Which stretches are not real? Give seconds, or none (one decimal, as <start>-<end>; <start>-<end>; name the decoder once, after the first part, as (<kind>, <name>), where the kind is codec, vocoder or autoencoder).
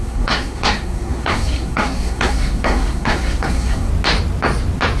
0.0-3.9 (codec, SNAC)